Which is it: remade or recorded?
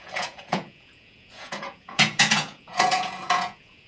remade